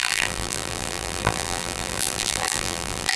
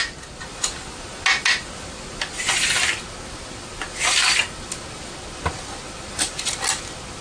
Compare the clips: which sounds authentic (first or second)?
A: second